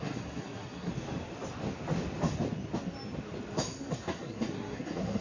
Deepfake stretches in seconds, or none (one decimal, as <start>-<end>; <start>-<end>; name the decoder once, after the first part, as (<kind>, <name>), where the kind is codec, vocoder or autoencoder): 0.0-0.9 (codec, SNAC); 3.9-5.2

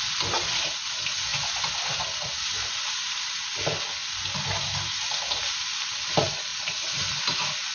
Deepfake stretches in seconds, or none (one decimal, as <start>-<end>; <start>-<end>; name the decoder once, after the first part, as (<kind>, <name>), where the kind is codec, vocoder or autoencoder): none

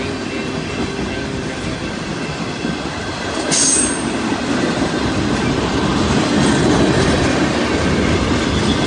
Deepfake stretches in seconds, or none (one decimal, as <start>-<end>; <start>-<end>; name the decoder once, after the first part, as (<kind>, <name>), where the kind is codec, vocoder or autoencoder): none

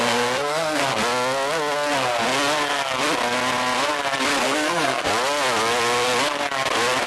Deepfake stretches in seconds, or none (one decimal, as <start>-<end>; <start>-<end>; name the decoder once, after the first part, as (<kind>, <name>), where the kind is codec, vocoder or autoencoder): 0.0-0.8 (codec, SNAC); 4.4-5.1

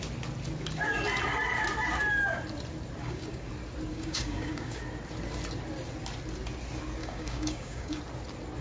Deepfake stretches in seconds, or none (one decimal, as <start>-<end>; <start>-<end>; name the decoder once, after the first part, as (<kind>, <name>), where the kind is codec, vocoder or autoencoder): 3.0-3.5 (codec, DAC); 3.9-4.8; 7.0-8.0